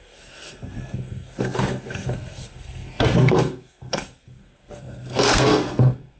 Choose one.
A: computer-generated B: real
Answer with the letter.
A